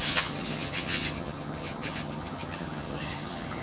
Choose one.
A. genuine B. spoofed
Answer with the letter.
B